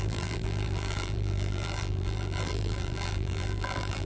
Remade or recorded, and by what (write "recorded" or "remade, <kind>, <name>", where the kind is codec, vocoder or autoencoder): remade, vocoder, BigVGAN v2